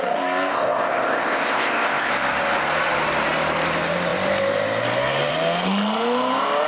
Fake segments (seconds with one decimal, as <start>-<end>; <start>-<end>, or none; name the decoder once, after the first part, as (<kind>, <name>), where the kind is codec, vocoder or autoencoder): 0.5-2.1 (codec, ZipCodec)